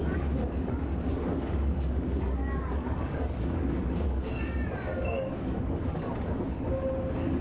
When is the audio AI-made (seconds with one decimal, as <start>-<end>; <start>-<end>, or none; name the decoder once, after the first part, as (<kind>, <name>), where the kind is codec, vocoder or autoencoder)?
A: 0.0-4.3 (codec, DAC); 5.0-7.4